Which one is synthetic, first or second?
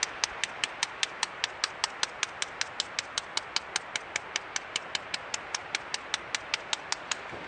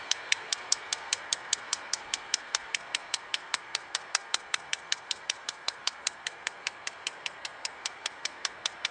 second